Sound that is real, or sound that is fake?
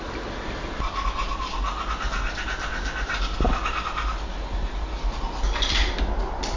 real